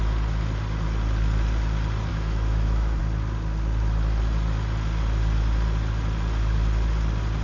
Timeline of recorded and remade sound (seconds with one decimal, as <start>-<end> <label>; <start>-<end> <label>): 0.0-2.1 recorded; 2.1-3.0 remade; 3.0-7.4 recorded